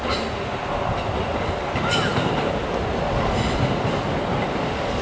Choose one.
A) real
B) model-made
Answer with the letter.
A